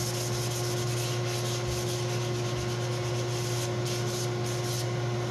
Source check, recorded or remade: recorded